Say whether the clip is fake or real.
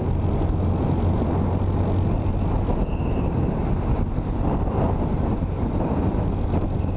real